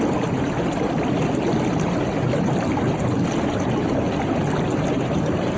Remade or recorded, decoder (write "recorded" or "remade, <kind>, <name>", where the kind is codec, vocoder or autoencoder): recorded